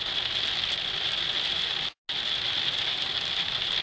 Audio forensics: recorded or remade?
recorded